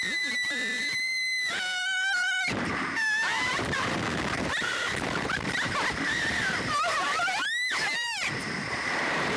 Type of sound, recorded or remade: remade